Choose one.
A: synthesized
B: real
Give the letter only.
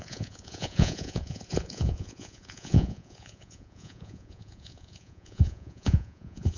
A